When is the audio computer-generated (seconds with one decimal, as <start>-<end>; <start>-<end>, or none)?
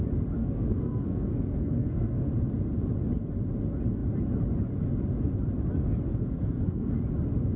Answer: 0.4-2.3; 6.1-7.0